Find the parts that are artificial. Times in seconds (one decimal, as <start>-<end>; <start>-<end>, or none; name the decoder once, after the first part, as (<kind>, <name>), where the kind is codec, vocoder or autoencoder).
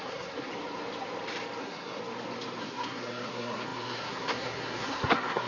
0.0-0.5 (codec, SNAC); 1.6-2.0; 2.6-5.5